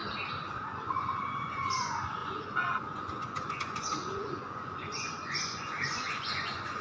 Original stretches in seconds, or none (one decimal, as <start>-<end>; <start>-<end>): 0.0-0.7

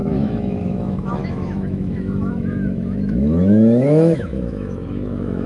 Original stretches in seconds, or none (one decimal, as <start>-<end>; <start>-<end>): none

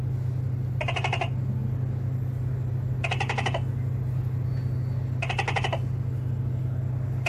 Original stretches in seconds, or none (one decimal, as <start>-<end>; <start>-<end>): 0.0-7.3

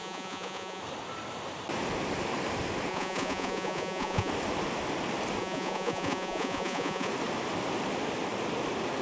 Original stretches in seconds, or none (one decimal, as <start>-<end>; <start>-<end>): 0.8-2.9; 4.3-5.4; 7.1-9.0

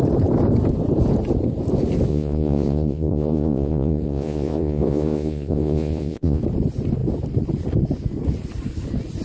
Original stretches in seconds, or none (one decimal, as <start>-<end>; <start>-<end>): 0.0-2.1; 6.4-9.2

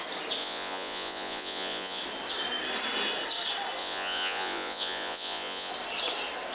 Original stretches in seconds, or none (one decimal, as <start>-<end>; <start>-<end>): 0.0-0.4; 2.0-3.8; 5.7-6.5